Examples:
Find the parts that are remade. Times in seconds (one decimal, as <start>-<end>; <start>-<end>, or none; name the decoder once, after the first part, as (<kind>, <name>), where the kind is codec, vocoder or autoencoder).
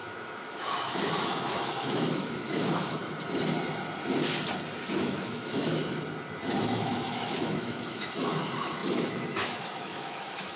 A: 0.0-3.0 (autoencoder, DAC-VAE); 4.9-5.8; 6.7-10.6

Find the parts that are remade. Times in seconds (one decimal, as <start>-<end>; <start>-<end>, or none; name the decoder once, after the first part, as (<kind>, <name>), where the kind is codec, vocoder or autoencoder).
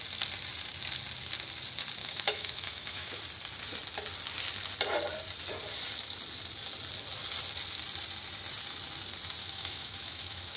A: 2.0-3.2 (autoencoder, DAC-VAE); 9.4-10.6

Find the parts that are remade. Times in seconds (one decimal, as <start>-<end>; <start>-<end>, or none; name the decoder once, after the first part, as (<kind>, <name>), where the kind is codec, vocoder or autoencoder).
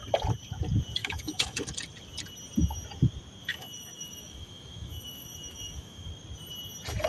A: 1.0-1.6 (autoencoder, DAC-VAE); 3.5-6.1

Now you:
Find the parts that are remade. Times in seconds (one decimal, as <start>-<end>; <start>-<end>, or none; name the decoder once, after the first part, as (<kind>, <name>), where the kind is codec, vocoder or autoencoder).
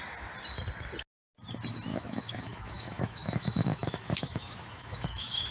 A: 1.9-5.5 (autoencoder, DAC-VAE)